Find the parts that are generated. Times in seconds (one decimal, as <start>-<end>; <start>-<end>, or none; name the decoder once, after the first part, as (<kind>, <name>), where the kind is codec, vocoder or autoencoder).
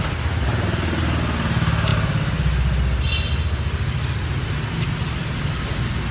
none